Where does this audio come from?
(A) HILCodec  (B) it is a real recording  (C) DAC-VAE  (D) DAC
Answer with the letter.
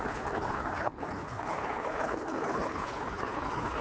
A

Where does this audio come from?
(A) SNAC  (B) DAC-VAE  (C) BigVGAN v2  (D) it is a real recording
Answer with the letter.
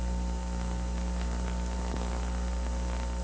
D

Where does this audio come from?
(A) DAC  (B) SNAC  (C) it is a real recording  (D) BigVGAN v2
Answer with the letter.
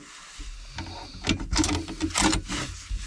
C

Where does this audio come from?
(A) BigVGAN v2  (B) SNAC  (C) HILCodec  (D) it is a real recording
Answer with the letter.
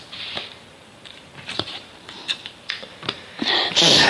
A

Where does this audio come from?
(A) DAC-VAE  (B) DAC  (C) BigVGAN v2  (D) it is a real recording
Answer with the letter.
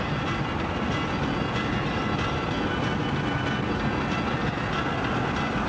D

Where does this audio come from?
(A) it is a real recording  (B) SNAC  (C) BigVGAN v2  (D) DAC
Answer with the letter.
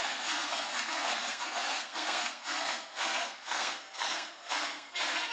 B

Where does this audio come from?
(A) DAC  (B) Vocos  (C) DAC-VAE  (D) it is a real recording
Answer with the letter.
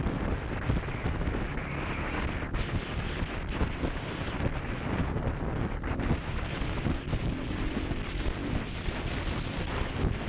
D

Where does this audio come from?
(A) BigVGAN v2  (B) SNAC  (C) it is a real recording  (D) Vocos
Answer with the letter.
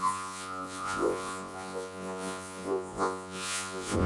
D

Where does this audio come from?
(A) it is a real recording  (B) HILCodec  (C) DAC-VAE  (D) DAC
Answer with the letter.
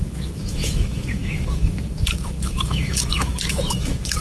C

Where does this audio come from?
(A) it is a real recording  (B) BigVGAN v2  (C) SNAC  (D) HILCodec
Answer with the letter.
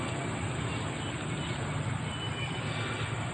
A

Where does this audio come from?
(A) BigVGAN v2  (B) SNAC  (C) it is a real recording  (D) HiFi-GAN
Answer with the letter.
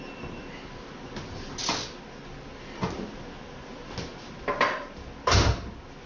C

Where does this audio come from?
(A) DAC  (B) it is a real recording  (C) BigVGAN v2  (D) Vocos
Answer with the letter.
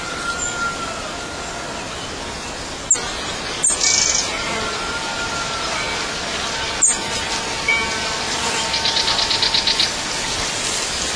B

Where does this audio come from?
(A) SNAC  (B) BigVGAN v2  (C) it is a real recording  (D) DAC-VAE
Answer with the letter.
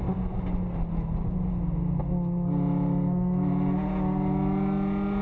C